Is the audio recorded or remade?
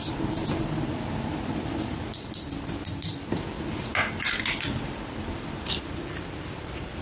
remade